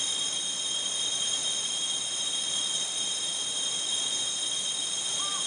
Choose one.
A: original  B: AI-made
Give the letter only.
A